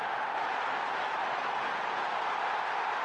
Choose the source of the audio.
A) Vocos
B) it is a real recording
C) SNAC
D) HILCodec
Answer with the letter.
B